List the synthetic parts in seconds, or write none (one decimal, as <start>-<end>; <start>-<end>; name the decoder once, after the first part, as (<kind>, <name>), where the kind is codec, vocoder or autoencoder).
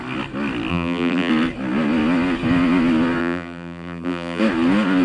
0.7-1.3 (vocoder, BigVGAN v2); 3.2-4.4